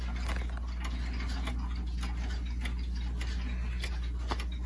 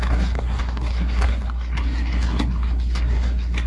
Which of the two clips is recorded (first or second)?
first